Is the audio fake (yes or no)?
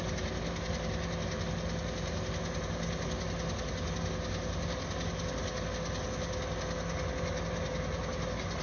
no